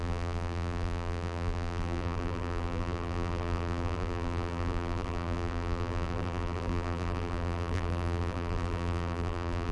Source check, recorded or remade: remade